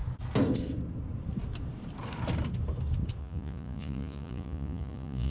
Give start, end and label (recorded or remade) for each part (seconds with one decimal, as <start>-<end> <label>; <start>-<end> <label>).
0.0-3.2 recorded; 3.2-5.3 remade